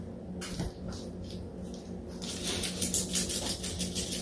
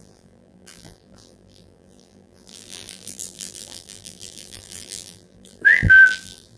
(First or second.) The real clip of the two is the first